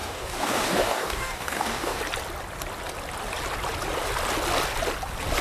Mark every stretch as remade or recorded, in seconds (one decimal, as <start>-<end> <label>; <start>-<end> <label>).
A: 0.0-2.0 remade; 2.0-5.4 recorded